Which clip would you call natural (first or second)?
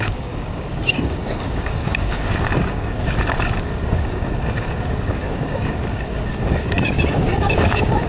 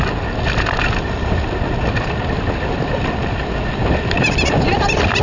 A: second